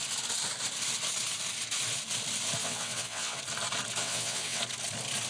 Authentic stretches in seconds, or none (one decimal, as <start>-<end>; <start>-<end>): 0.0-2.6; 3.4-4.0; 4.6-5.3